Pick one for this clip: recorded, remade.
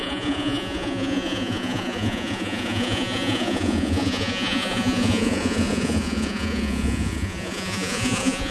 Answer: remade